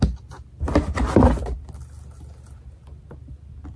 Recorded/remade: recorded